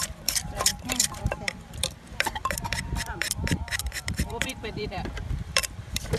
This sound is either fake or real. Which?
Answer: fake